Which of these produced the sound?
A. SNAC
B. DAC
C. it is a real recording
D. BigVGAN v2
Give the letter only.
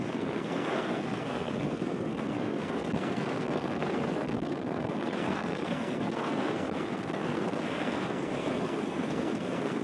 A